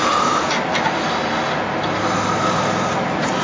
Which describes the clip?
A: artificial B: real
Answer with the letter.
B